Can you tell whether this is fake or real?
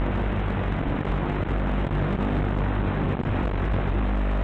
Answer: real